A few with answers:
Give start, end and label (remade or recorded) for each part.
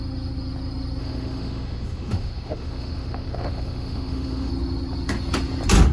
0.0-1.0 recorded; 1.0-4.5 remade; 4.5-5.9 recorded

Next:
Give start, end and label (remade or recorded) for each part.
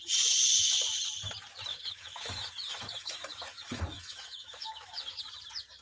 0.0-1.7 recorded; 1.7-5.2 remade; 5.2-5.8 recorded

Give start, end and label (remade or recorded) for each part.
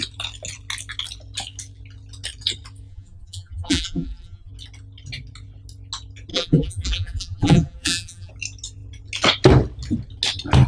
0.0-2.9 recorded; 2.9-4.5 remade; 4.5-6.3 recorded; 6.3-8.3 remade; 8.3-10.7 recorded